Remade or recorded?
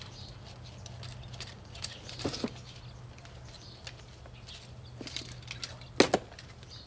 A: recorded